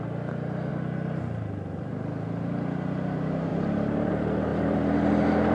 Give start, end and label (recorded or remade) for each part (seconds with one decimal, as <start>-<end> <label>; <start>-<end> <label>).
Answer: 0.0-3.5 recorded; 3.5-4.1 remade; 4.1-4.5 recorded; 4.5-5.1 remade; 5.1-5.5 recorded